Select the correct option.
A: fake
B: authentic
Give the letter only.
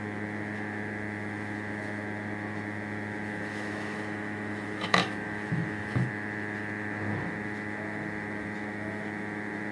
A